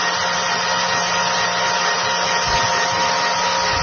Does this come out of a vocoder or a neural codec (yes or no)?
no